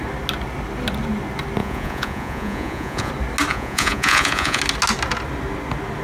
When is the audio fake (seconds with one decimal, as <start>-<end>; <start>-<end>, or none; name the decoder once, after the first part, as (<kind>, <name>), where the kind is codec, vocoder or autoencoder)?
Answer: 1.6-3.1 (vocoder, Vocos); 3.5-4.6